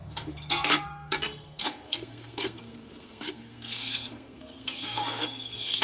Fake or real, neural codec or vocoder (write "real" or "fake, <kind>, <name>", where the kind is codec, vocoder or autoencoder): fake, codec, SNAC